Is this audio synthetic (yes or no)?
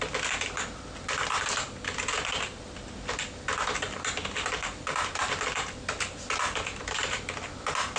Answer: no